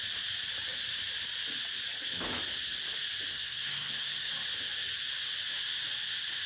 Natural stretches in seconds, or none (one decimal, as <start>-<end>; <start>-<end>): 0.0-3.3; 4.3-6.5